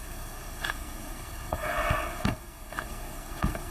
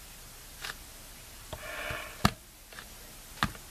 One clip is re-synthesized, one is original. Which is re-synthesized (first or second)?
first